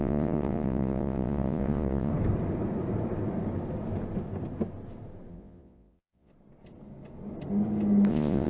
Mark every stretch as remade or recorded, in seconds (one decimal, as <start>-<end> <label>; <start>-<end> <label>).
0.0-2.1 remade; 2.1-5.3 recorded; 5.3-6.3 remade; 6.3-8.1 recorded; 8.1-8.5 remade